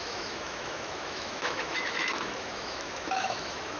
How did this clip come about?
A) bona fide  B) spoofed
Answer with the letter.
B